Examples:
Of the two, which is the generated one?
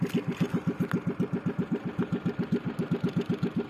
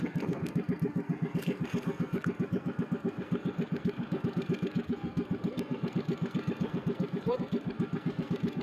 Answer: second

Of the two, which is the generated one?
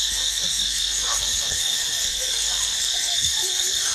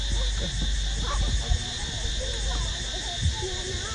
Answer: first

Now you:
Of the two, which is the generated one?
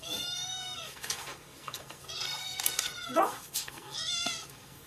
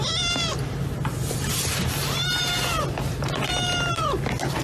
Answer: first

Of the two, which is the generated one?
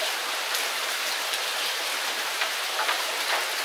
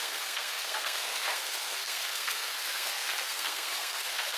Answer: second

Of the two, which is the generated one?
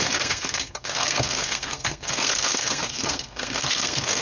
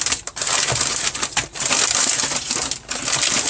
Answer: first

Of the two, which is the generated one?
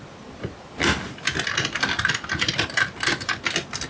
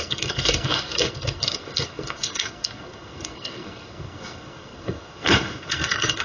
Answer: second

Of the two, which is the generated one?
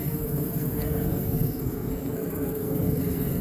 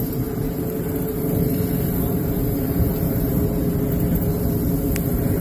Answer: first